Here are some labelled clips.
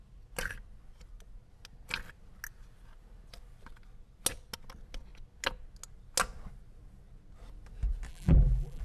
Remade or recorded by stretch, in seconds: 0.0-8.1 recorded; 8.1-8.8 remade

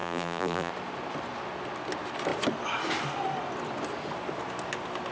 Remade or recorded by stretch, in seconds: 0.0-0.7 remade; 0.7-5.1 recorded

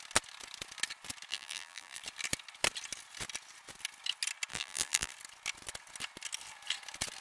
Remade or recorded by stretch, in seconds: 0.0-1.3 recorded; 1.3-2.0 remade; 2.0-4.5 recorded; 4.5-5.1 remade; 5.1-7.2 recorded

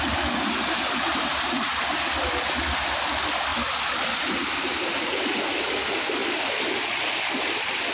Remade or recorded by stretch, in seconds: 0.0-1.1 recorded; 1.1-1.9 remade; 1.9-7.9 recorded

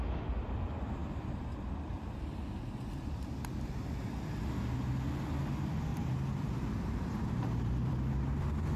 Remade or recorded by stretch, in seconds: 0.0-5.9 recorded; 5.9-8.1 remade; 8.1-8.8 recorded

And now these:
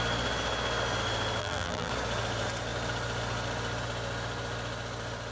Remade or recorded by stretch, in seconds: 0.0-1.4 recorded; 1.4-1.9 remade; 1.9-5.3 recorded

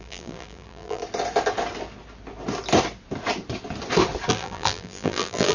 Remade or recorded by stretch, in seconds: 0.0-1.0 remade; 1.0-4.3 recorded; 4.3-5.5 remade

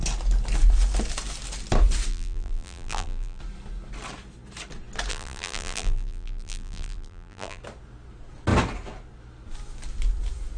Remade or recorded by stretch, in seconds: 0.0-2.1 recorded; 2.1-3.4 remade; 3.4-5.1 recorded; 5.1-7.6 remade; 7.6-10.6 recorded